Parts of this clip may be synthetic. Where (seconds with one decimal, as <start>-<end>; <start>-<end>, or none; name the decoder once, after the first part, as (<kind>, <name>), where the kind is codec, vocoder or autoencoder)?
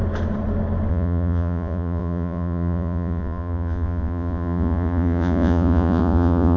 0.9-6.6 (vocoder, Vocos)